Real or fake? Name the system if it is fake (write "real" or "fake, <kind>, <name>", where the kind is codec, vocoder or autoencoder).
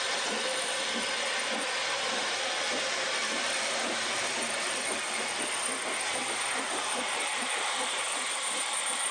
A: fake, vocoder, BigVGAN v2